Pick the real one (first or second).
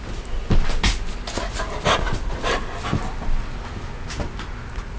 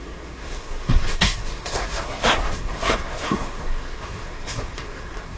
first